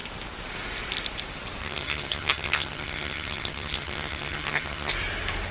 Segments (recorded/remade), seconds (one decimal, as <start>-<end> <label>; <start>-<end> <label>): 0.0-1.6 recorded; 1.6-4.9 remade; 4.9-5.5 recorded